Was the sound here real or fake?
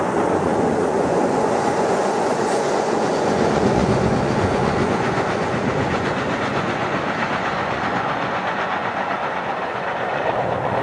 fake